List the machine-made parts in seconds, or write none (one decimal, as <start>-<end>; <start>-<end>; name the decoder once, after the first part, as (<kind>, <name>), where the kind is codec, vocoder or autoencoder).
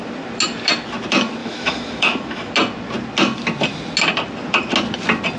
1.4-2.5 (autoencoder, DAC-VAE)